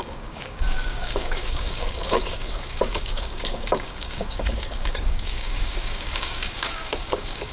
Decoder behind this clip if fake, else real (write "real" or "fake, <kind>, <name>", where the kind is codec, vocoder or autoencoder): fake, codec, DAC